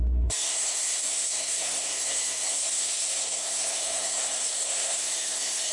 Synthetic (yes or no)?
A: yes